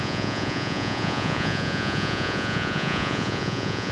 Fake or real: fake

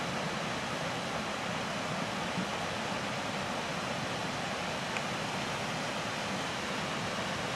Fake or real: real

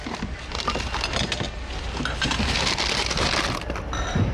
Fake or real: real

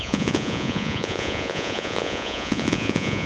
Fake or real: fake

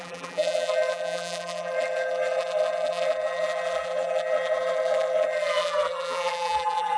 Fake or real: fake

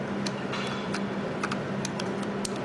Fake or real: real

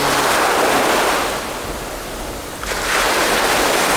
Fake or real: real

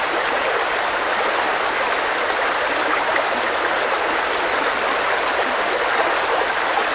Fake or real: real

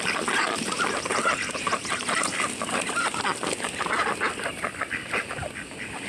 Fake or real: fake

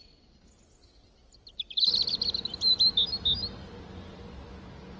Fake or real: real